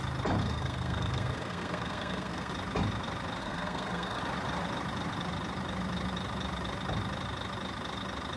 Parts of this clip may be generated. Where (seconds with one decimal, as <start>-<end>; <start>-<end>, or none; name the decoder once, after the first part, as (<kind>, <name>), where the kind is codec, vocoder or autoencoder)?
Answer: 0.4-2.5 (codec, SNAC); 3.4-4.2

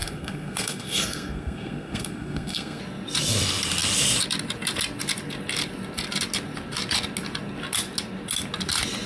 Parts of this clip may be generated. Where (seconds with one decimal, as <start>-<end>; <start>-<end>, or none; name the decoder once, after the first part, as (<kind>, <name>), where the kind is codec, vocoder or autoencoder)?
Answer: 0.0-2.8 (codec, SNAC)